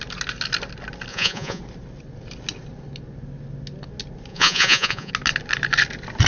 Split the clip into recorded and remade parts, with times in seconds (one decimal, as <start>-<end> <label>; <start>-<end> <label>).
0.0-1.1 recorded; 1.1-1.6 remade; 1.6-4.3 recorded; 4.3-5.1 remade; 5.1-6.3 recorded